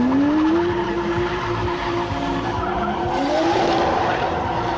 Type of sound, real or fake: fake